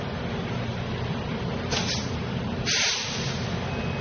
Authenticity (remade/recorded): recorded